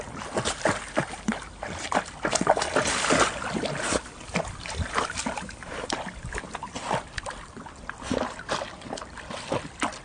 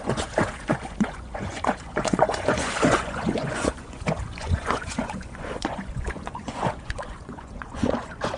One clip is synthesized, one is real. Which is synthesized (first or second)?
second